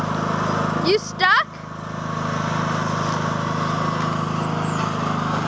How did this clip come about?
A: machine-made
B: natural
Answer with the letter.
B